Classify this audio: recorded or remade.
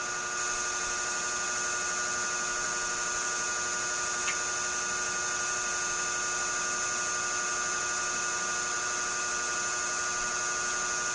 recorded